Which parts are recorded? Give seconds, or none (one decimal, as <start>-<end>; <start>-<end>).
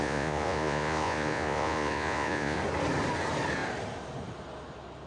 2.6-5.1